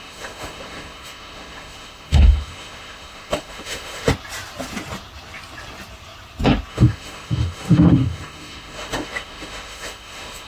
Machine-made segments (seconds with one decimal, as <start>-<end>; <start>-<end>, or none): 0.0-4.1; 6.7-10.5